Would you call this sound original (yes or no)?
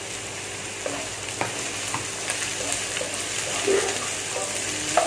yes